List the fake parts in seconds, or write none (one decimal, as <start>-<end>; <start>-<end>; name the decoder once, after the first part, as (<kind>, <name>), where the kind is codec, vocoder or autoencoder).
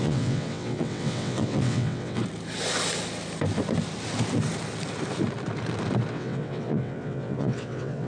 0.0-2.2 (vocoder, WaveNeXt); 6.1-8.1